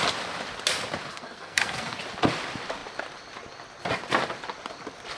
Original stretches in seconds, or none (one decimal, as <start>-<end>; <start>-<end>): 0.0-1.1; 2.0-5.2